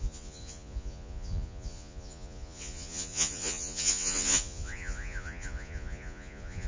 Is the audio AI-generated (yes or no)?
yes